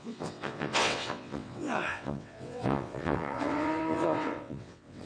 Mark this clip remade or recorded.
remade